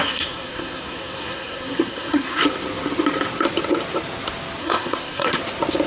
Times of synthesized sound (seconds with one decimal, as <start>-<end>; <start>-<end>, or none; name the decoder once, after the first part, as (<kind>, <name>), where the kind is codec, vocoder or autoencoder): 0.0-2.4 (codec, SNAC); 4.6-5.4